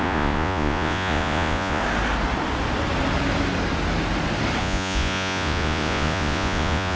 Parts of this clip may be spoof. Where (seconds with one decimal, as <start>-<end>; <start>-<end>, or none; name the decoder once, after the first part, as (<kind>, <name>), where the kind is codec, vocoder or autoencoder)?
0.0-1.8 (vocoder, Vocos); 4.6-7.0